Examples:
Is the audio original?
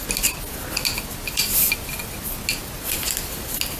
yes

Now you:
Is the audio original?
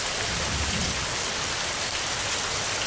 yes